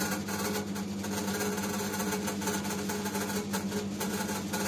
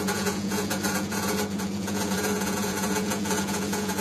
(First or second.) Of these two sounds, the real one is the first